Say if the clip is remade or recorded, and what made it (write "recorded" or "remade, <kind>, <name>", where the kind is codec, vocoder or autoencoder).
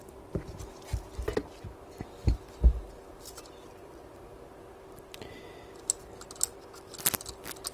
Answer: recorded